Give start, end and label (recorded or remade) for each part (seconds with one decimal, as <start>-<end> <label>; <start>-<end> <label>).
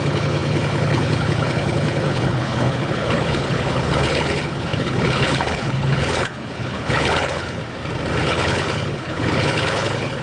0.0-7.6 remade; 7.6-8.2 recorded; 8.2-10.2 remade